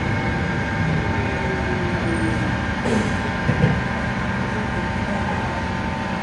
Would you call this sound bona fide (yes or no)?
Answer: yes